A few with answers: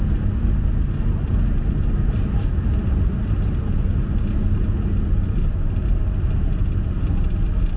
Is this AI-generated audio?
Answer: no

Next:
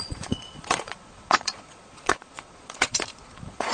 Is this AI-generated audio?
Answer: yes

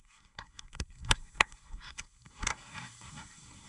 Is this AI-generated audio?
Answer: yes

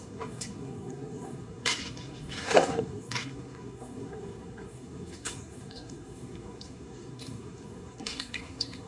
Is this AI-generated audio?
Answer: yes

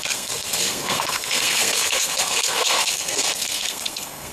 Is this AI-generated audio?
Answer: yes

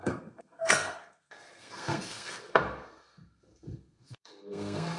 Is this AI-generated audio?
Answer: yes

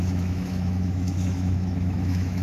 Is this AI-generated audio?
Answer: yes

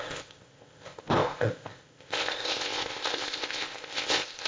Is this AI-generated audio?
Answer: yes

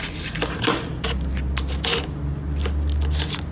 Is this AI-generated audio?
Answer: no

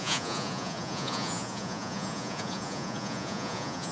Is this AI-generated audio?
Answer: yes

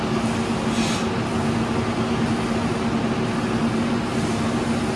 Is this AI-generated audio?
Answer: no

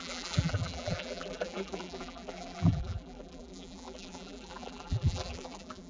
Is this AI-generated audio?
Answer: yes